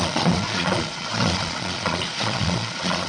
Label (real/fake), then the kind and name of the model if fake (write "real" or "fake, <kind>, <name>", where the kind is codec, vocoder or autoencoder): fake, vocoder, Vocos